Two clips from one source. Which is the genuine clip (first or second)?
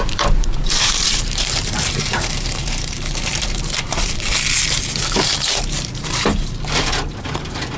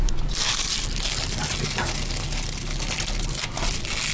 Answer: second